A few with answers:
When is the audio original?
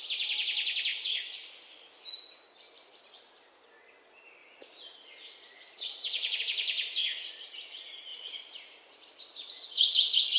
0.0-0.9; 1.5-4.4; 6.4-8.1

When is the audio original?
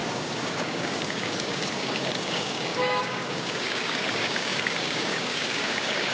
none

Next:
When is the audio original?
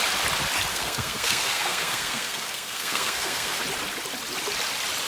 0.0-0.7; 3.6-5.1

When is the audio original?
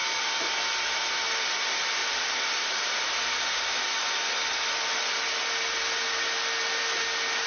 0.0-2.0; 4.2-7.5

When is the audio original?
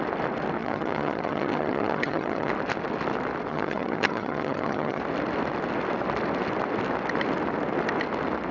0.0-0.6; 2.5-3.5; 5.0-8.5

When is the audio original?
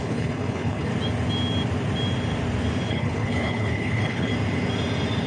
0.9-2.9; 4.3-5.3